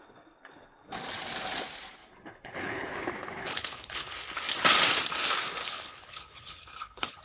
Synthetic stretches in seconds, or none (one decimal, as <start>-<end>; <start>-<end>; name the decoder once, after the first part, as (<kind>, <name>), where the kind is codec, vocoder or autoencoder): 2.0-2.9 (codec, HILCodec); 3.4-4.1; 5.6-7.2